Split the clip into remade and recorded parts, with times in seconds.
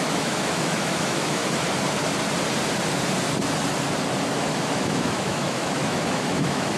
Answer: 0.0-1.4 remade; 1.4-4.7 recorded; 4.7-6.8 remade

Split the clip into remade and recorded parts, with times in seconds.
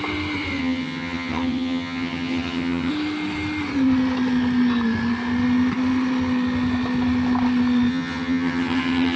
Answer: 0.0-0.6 recorded; 0.6-2.9 remade; 2.9-7.9 recorded; 7.9-9.2 remade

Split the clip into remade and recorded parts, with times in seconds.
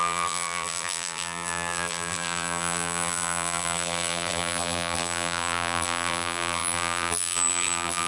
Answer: 0.0-8.1 remade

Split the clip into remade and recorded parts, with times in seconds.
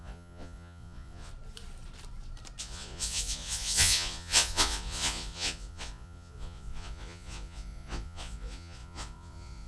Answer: 0.0-1.3 remade; 1.3-2.6 recorded; 2.6-9.7 remade